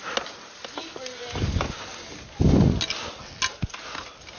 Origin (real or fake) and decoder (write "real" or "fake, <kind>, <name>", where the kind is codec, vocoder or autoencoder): real